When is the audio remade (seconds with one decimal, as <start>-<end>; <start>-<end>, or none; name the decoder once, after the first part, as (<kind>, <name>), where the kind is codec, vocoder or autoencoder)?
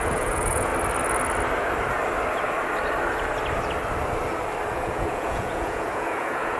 0.0-0.7 (vocoder, Vocos); 4.7-6.6